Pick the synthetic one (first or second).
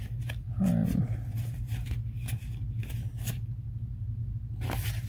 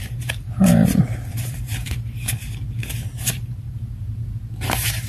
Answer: second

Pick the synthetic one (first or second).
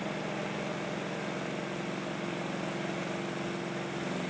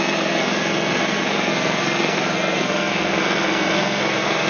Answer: second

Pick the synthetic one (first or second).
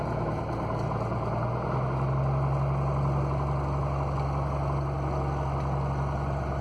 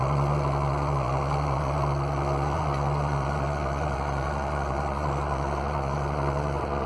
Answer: second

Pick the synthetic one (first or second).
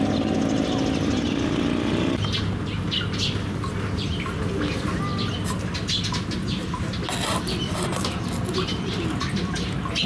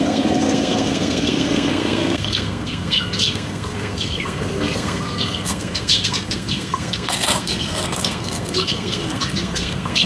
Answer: second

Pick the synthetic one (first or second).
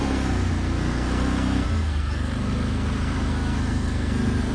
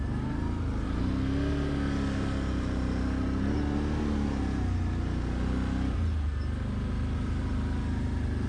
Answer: first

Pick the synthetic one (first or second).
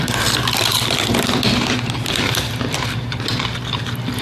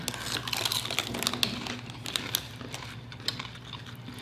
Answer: first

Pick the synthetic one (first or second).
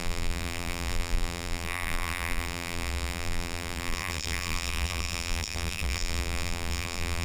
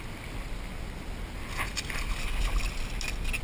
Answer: first